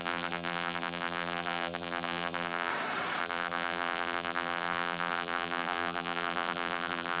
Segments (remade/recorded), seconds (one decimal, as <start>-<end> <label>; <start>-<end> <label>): 0.0-2.7 remade; 2.7-3.2 recorded; 3.2-7.2 remade